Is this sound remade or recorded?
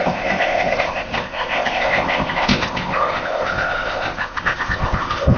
remade